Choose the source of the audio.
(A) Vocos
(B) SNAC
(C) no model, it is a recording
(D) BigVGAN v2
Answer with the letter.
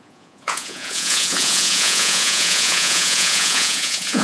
A